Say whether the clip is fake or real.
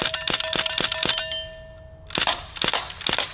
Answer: real